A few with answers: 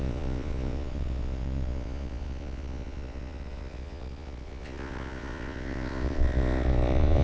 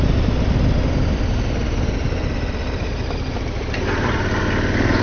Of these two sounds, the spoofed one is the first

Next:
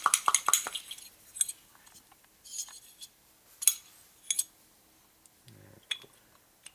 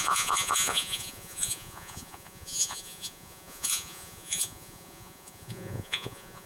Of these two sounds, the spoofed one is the second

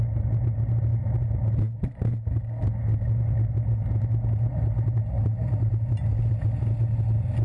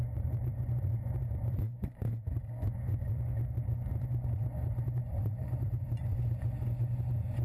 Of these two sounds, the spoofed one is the second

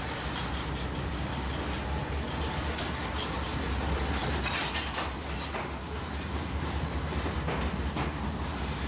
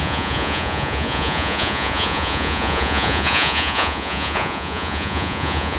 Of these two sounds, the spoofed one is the second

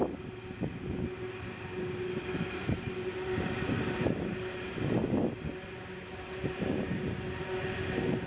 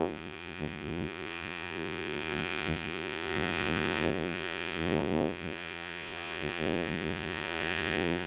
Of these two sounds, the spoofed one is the second